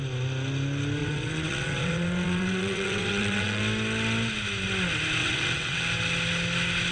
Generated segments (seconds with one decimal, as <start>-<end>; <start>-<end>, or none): 1.0-3.6; 5.2-5.8